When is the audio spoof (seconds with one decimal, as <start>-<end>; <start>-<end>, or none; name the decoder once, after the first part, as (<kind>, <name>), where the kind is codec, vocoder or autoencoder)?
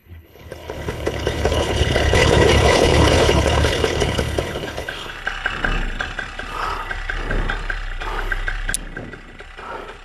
0.0-5.1 (codec, HILCodec)